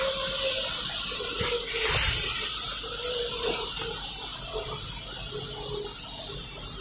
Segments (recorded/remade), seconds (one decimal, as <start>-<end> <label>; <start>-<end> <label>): 0.0-4.3 remade; 4.3-6.3 recorded; 6.3-6.8 remade

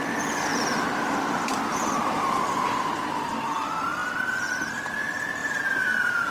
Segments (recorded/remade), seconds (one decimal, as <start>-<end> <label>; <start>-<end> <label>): 0.0-0.5 recorded; 0.5-3.2 remade; 3.2-5.4 recorded; 5.4-6.3 remade